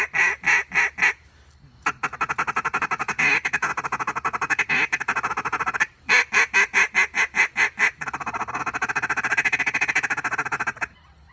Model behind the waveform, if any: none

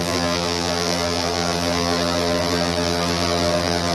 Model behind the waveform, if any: vocoder, BigVGAN v2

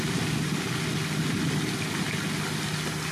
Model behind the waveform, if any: none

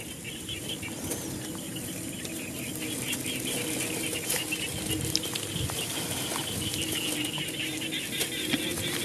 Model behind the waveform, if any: none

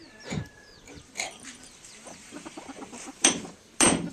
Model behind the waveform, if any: vocoder, BigVGAN v2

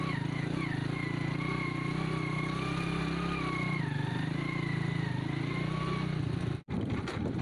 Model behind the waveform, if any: none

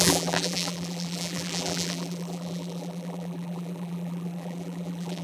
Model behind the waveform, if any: vocoder, BigVGAN v2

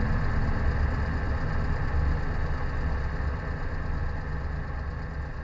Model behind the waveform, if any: none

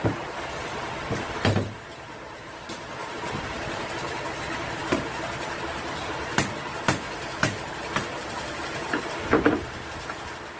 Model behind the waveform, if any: vocoder, BigVGAN v2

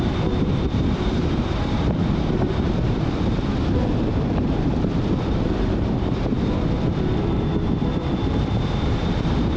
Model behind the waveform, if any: vocoder, BigVGAN v2